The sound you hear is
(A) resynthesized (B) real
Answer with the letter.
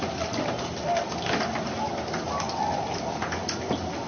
B